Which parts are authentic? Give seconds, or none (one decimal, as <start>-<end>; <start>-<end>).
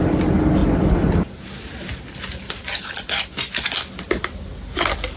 0.0-5.2